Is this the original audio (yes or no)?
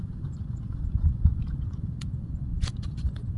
no